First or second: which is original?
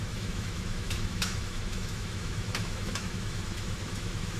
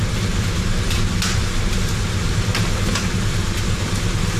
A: second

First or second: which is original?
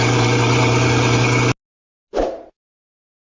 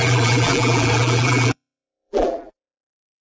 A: first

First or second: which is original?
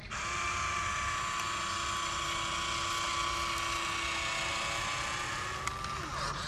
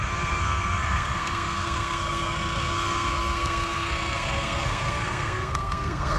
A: first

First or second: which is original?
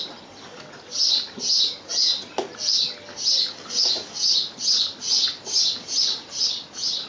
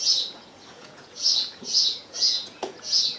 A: first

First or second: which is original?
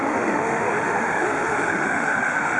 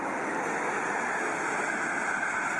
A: second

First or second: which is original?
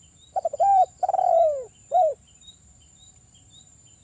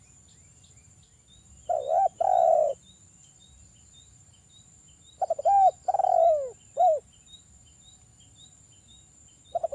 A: second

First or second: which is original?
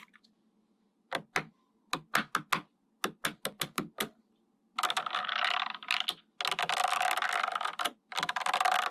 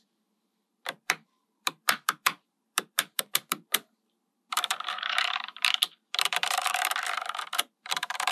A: first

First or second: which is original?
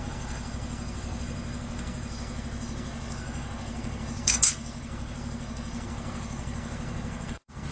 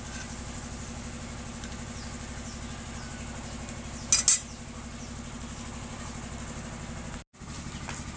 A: second